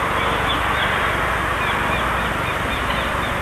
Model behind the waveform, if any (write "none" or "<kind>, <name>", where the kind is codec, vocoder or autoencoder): none